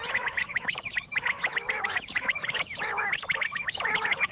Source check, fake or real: fake